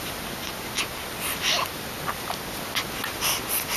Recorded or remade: recorded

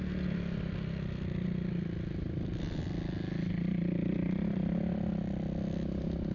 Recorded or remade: recorded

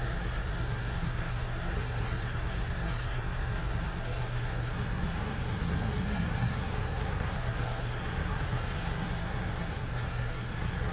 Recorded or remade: remade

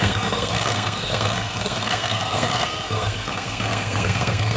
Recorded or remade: remade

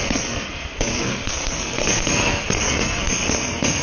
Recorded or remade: remade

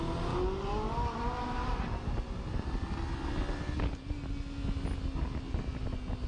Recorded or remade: recorded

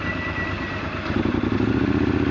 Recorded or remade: recorded